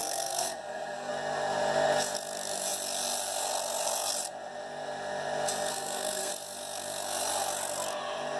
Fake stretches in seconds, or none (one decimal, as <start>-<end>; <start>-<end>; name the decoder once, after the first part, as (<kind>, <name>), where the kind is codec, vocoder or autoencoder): 0.0-1.1 (codec, SNAC); 5.7-6.3